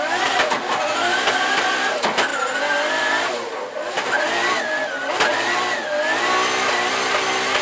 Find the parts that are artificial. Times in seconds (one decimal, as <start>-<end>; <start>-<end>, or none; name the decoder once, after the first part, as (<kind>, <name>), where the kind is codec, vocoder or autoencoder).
none